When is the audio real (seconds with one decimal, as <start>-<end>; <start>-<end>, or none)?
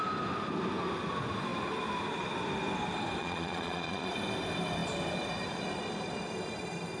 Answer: 0.0-3.2; 4.1-7.0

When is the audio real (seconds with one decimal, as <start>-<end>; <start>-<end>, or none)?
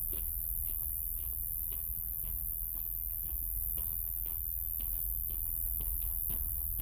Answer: 0.0-6.8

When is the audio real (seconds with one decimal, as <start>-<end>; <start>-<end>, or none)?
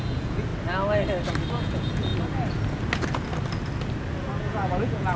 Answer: 0.5-1.5; 2.1-4.4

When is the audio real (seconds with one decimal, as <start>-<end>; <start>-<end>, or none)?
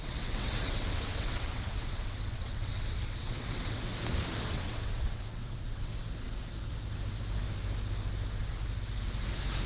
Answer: 3.9-4.5; 5.9-9.7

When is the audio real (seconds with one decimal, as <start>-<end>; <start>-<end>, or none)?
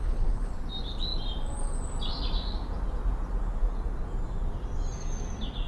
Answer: 0.5-5.7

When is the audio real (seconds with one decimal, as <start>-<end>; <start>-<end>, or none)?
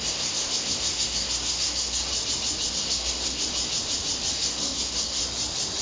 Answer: 2.1-2.7; 3.4-4.3; 5.2-5.8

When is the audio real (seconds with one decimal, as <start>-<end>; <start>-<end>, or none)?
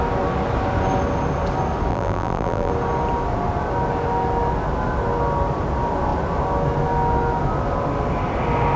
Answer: 0.0-1.9; 2.7-8.8